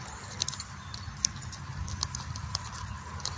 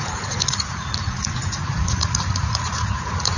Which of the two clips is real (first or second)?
first